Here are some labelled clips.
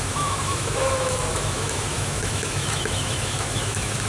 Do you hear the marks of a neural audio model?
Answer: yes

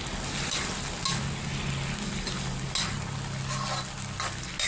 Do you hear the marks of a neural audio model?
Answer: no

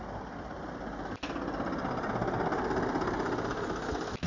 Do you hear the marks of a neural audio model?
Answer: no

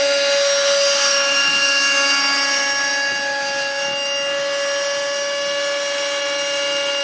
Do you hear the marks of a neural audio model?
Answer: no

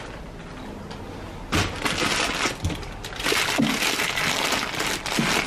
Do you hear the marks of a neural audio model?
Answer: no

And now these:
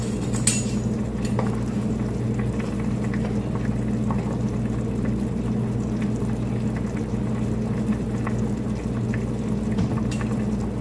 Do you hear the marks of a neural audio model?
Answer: no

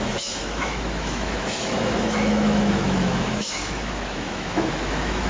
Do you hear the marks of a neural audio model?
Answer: yes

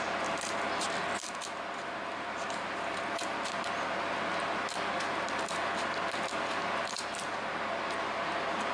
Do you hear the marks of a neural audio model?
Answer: no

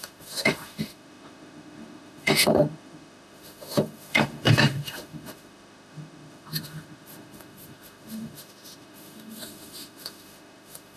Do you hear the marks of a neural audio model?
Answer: yes